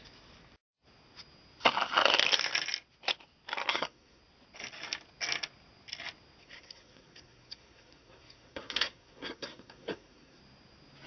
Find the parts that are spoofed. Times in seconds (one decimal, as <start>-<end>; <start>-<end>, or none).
3.7-4.2; 6.4-10.4